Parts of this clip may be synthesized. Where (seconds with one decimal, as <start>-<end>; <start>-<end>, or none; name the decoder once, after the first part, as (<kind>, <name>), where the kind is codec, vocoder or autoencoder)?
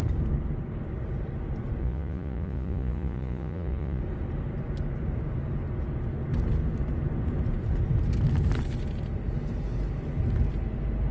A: 1.8-4.0 (vocoder, Vocos)